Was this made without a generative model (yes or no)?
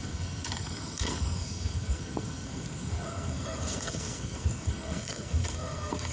no